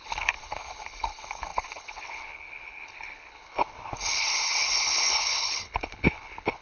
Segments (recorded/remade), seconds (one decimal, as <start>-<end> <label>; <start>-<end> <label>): 0.0-6.6 remade